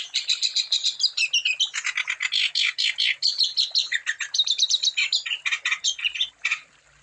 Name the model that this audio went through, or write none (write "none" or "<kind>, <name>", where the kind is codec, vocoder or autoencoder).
none